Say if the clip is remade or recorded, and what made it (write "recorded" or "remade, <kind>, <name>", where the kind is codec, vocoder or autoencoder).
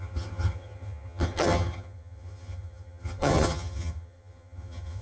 remade, vocoder, HiFi-GAN